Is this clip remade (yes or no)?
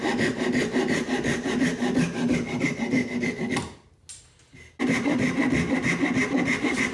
no